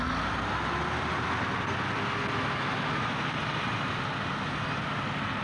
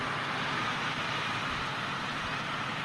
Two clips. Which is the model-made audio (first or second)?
second